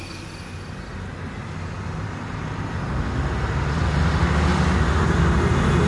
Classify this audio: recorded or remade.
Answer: recorded